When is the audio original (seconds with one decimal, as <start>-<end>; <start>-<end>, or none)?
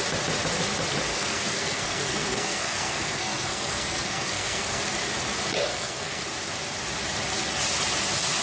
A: 0.0-1.1; 4.8-5.7; 6.2-8.4